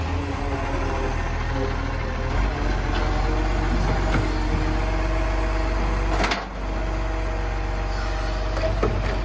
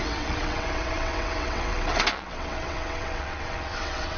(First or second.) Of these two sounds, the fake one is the second